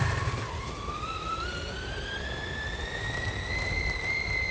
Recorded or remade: recorded